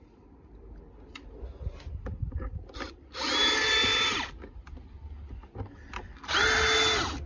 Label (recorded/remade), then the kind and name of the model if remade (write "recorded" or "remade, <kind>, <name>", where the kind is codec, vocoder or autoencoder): recorded